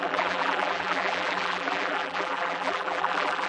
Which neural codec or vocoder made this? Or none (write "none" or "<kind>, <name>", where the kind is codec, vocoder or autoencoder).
vocoder, BigVGAN v2